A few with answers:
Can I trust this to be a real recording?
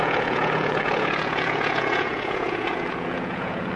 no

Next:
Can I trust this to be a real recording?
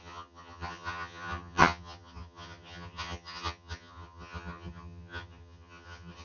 no